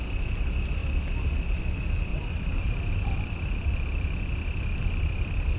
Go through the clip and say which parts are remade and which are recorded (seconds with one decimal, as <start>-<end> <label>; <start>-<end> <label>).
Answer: 0.0-2.1 recorded; 2.1-3.7 remade; 3.7-5.6 recorded